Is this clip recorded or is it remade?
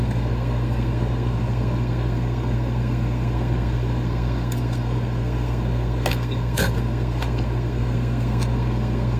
remade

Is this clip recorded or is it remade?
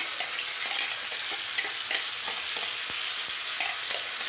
recorded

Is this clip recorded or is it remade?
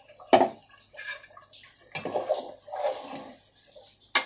recorded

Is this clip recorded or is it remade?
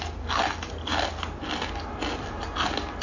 recorded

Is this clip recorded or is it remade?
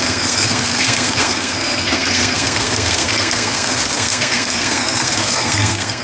remade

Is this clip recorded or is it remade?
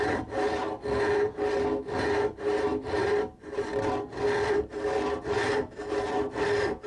recorded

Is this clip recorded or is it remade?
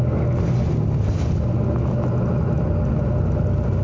recorded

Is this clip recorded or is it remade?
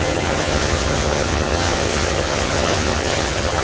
remade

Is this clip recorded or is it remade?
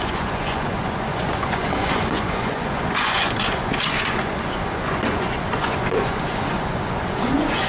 remade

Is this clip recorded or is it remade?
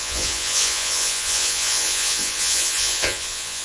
remade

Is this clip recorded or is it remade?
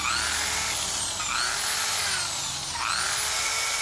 recorded